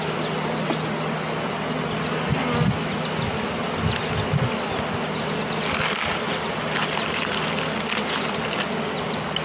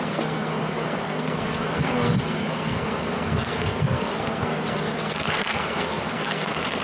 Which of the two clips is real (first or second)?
first